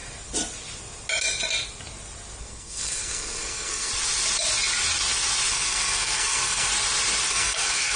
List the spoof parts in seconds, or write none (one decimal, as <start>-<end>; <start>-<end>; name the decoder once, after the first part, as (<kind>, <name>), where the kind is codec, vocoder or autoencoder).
2.4-3.9 (codec, SNAC); 5.5-6.7; 7.3-8.0